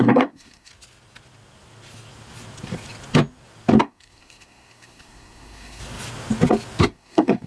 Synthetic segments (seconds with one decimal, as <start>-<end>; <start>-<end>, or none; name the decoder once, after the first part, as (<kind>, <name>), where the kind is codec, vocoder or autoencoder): 0.0-0.7 (codec, SNAC); 3.8-5.8; 6.8-7.5